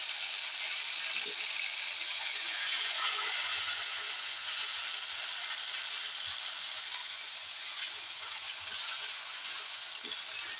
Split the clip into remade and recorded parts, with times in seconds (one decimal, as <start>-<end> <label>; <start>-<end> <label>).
0.0-2.1 recorded; 2.1-4.8 remade; 4.8-7.0 recorded; 7.0-9.9 remade; 9.9-10.6 recorded